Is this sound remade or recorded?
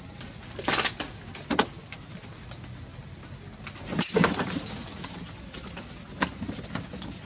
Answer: recorded